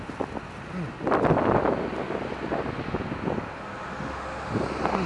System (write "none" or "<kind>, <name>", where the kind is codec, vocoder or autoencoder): none